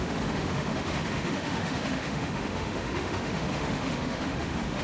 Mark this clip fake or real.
fake